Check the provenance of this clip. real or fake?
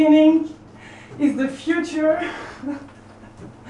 real